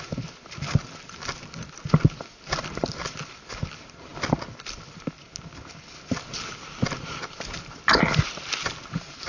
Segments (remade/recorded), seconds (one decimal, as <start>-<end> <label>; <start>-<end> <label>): 0.0-9.3 recorded